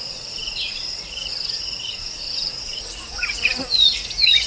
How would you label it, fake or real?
fake